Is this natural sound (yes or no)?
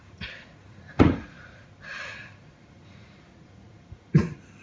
no